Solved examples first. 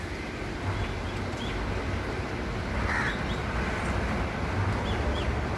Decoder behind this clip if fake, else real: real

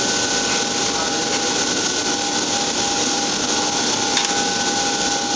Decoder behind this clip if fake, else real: real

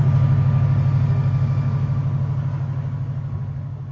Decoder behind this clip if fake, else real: real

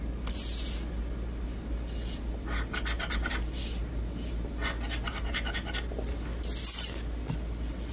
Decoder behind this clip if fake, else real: real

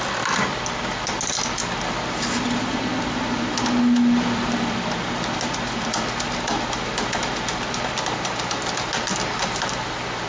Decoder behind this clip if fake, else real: real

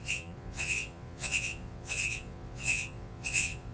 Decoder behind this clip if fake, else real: fake, vocoder, Vocos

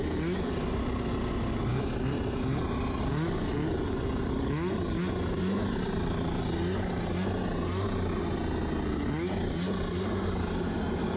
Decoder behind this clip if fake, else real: real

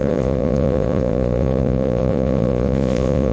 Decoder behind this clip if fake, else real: fake, vocoder, Vocos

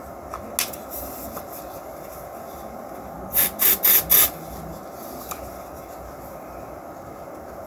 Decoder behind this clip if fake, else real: real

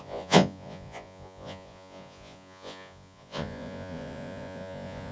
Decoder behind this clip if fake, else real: fake, vocoder, Vocos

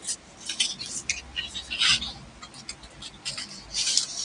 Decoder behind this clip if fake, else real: real